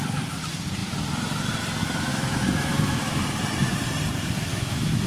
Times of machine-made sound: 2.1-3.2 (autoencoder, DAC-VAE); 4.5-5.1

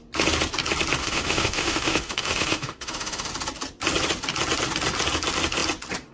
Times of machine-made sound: 1.0-3.3 (autoencoder, DAC-VAE)

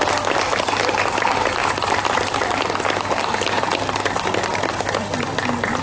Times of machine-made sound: none

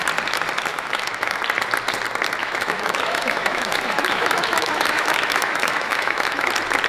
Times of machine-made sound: 0.7-1.4 (autoencoder, DAC-VAE); 2.4-6.5

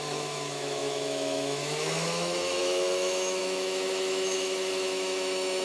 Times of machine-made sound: 0.0-5.6 (autoencoder, DAC-VAE)

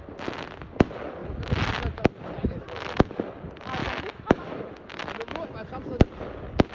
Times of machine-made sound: 3.8-4.7 (autoencoder, DAC-VAE)

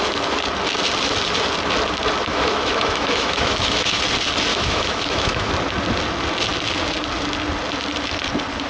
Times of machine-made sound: 2.3-4.0 (autoencoder, DAC-VAE); 4.5-5.5

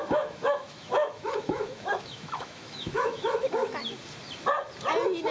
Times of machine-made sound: 0.0-3.8 (autoencoder, DAC-VAE)